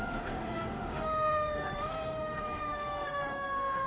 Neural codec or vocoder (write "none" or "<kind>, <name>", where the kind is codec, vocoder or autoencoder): autoencoder, DAC-VAE